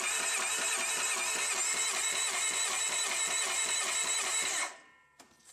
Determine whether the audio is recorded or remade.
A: recorded